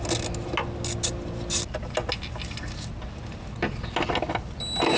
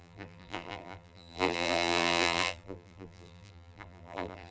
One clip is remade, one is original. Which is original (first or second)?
first